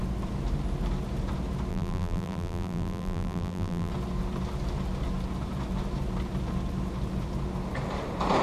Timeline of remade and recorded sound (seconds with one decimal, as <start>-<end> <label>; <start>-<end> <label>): 0.0-1.7 recorded; 1.7-3.9 remade; 3.9-8.4 recorded